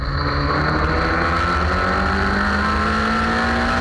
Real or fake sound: real